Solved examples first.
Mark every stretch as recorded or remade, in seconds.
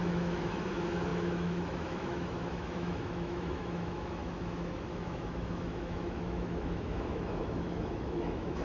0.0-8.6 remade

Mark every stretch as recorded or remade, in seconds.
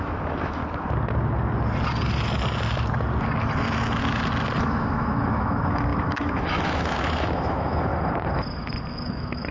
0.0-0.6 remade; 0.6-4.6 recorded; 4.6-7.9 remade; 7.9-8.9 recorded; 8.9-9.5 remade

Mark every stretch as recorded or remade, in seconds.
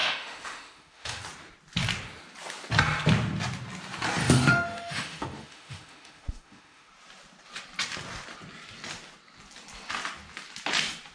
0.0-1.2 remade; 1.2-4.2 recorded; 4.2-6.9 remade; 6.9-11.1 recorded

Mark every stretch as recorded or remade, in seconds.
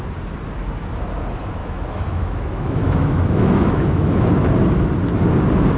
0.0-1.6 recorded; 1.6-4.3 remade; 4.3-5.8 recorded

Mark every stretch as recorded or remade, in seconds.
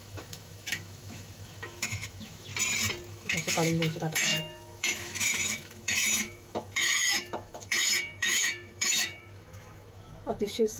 0.0-2.5 remade; 2.5-3.1 recorded; 3.1-10.8 remade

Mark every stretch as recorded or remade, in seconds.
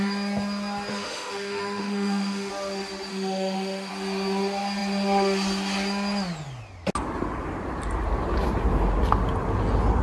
0.0-0.9 recorded; 0.9-2.5 remade; 2.5-3.1 recorded; 3.1-3.9 remade; 3.9-10.0 recorded